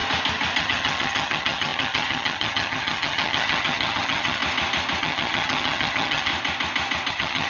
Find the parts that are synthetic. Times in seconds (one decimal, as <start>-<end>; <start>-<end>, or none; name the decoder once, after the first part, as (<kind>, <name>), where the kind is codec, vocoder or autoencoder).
0.6-4.4 (vocoder, HiFi-GAN); 5.0-6.3; 7.1-7.5